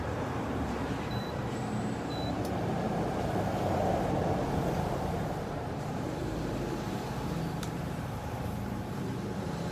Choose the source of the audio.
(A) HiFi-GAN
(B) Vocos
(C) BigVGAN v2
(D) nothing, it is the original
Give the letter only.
C